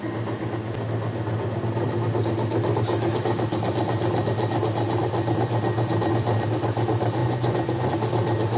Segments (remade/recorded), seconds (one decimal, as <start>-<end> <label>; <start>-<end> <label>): 0.0-7.2 recorded; 7.2-7.9 remade; 7.9-8.6 recorded